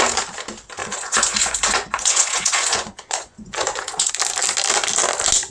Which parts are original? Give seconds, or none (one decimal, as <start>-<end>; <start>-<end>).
0.0-0.8; 4.1-5.5